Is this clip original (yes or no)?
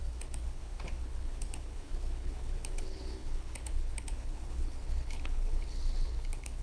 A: no